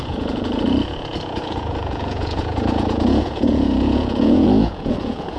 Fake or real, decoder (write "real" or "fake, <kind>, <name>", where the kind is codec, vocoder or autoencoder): fake, vocoder, Vocos